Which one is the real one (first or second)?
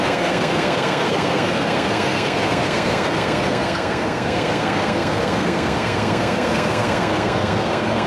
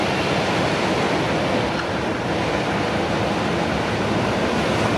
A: second